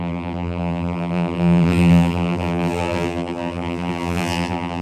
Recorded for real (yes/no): no